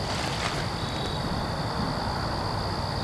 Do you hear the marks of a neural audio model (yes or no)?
no